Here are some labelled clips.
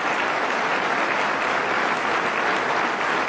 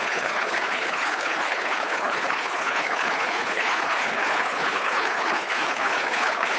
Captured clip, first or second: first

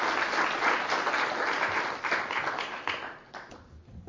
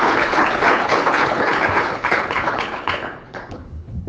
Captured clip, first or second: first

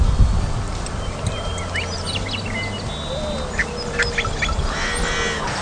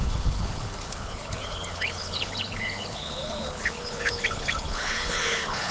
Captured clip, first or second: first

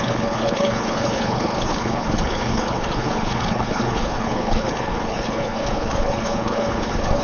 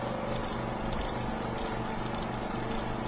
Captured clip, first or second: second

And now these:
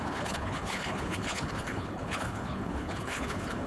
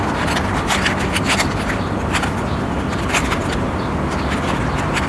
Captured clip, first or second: second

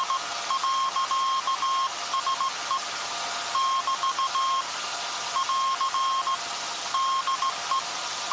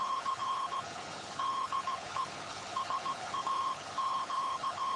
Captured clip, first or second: first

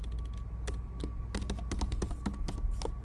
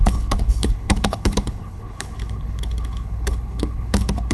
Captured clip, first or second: first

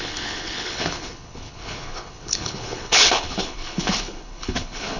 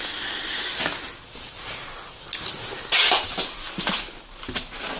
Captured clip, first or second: second